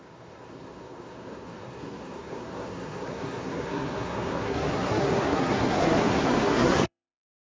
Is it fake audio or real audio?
fake